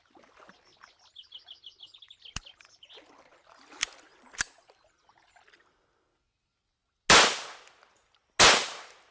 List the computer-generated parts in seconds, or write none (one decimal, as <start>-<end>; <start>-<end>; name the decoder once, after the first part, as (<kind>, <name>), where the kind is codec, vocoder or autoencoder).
none